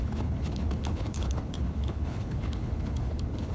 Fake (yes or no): yes